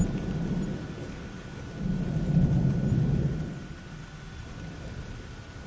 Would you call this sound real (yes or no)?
yes